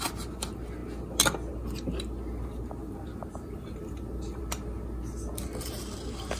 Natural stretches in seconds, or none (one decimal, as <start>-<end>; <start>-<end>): 0.0-2.8; 4.4-6.4